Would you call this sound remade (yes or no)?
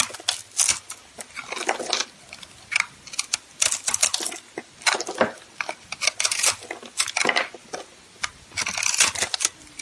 no